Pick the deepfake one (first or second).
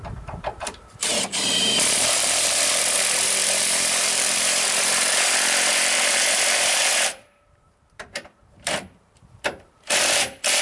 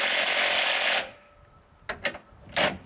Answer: first